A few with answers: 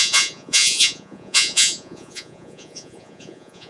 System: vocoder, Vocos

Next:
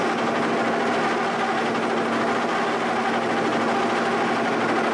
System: none